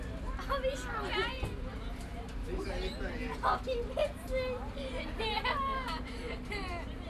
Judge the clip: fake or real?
real